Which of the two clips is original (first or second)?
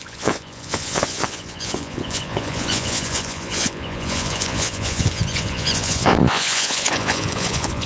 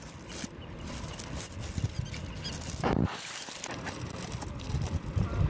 second